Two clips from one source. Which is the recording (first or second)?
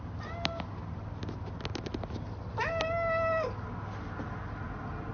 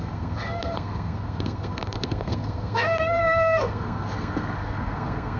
first